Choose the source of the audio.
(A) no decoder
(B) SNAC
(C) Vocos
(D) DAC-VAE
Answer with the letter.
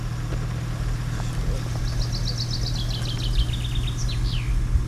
A